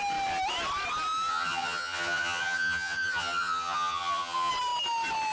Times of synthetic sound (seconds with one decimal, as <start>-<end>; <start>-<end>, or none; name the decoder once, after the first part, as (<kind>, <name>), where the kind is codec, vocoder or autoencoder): 1.3-4.5 (vocoder, HiFi-GAN)